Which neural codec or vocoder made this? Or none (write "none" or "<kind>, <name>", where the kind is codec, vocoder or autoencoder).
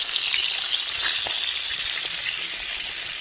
none